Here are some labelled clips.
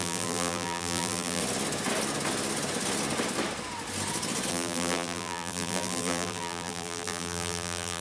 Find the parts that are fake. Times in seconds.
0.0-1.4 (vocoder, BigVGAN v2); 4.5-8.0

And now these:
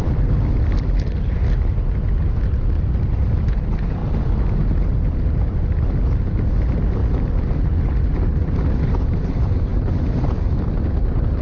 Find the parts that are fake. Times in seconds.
none